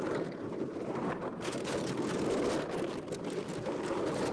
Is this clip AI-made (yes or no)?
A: no